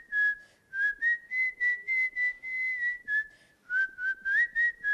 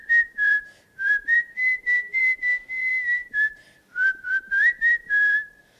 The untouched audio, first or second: first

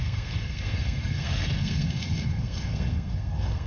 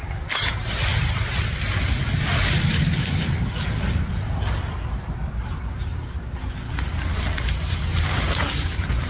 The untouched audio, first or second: second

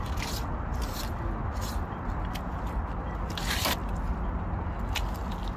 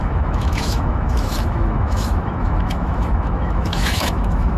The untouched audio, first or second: first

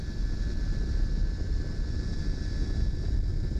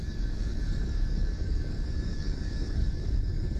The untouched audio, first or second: first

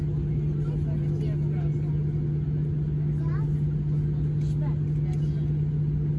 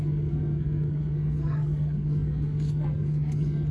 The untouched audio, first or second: first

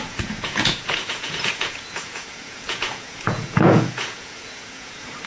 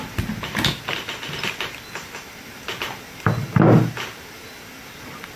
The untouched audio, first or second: second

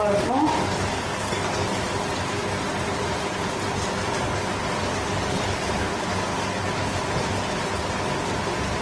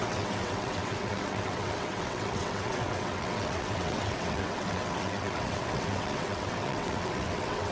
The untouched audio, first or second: first